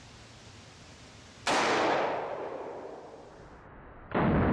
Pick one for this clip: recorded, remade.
recorded